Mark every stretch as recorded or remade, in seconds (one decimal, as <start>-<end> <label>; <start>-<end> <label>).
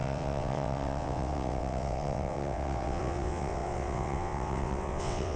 0.0-5.4 remade